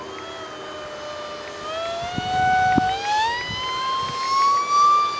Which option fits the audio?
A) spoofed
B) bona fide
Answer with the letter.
B